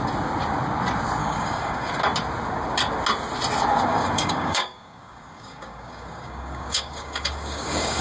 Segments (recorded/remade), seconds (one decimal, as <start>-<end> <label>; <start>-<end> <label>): 0.0-1.2 recorded; 1.2-1.9 remade; 1.9-3.9 recorded; 3.9-8.0 remade